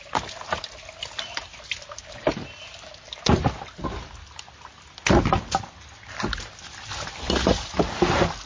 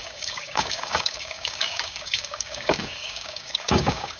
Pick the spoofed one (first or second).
second